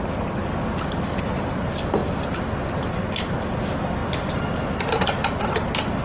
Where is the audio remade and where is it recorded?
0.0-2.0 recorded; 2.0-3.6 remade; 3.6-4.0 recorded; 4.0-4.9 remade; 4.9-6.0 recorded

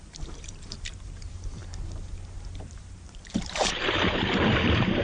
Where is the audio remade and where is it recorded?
0.0-1.6 remade; 1.6-2.6 recorded; 2.6-5.0 remade